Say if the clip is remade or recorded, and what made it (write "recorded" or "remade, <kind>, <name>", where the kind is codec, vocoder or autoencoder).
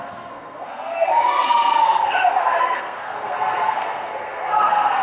remade, codec, SNAC